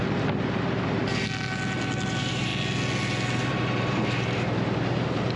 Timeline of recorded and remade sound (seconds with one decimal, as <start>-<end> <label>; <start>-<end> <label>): 0.0-1.0 remade; 1.0-2.1 recorded; 2.1-2.5 remade; 2.5-3.5 recorded; 3.5-5.4 remade